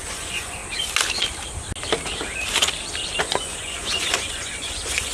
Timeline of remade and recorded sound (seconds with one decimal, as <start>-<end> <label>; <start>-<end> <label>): 0.0-0.6 remade; 0.6-3.2 recorded; 3.2-5.1 remade